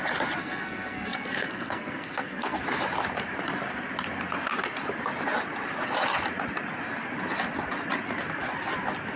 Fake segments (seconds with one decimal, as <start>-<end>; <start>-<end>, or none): 0.4-2.6